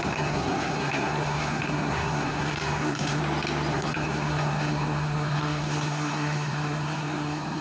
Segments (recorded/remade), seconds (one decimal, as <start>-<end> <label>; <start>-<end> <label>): 0.0-3.2 remade; 3.2-3.7 recorded; 3.7-7.6 remade